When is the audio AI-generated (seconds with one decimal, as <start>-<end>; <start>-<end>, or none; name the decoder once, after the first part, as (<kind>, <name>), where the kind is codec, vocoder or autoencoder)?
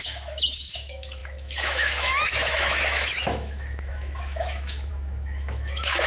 0.0-6.1 (autoencoder, DAC-VAE)